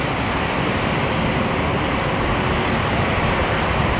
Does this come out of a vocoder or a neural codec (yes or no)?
no